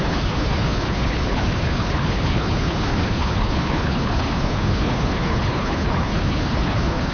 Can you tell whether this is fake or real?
fake